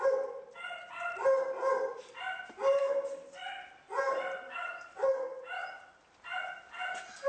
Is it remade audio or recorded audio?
recorded